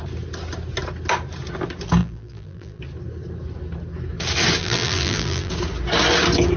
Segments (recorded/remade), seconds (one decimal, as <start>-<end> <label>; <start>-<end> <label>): 0.0-2.0 recorded; 2.0-2.8 remade; 2.8-4.6 recorded; 4.6-5.5 remade; 5.5-6.6 recorded